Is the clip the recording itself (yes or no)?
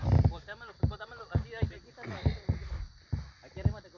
yes